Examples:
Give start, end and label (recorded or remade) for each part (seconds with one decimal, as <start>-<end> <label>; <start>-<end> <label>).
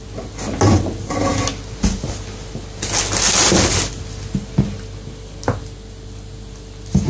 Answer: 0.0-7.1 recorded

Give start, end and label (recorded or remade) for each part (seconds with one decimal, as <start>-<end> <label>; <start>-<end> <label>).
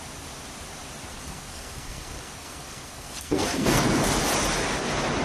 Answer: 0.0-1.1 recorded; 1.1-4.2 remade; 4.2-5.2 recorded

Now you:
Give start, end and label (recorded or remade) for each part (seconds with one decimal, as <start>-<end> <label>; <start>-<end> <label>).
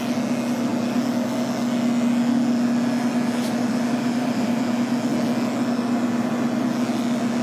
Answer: 0.0-3.6 recorded; 3.6-4.6 remade; 4.6-7.4 recorded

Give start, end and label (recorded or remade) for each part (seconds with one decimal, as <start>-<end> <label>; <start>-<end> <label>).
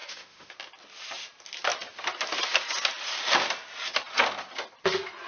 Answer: 0.0-0.5 remade; 0.5-5.3 recorded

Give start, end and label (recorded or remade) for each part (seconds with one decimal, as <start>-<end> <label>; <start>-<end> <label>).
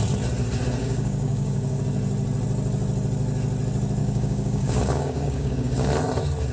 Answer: 0.0-0.8 recorded; 0.8-1.8 remade; 1.8-4.0 recorded; 4.0-5.9 remade; 5.9-6.5 recorded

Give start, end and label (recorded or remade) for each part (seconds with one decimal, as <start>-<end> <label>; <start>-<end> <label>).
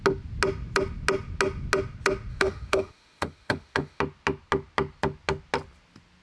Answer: 0.0-2.3 recorded; 2.3-4.0 remade; 4.0-6.2 recorded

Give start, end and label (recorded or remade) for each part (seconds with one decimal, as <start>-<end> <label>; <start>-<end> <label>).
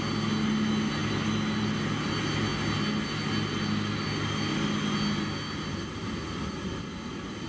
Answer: 0.0-7.5 recorded